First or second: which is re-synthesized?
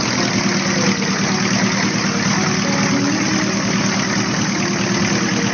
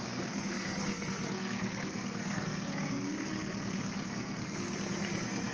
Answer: second